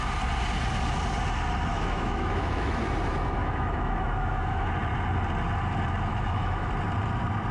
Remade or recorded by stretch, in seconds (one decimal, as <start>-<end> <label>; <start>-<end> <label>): 0.0-1.7 recorded; 1.7-2.8 remade; 2.8-3.4 recorded; 3.4-4.7 remade; 4.7-6.1 recorded; 6.1-6.7 remade; 6.7-7.5 recorded